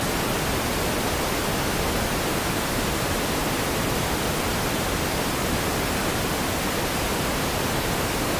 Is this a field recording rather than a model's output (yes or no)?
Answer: yes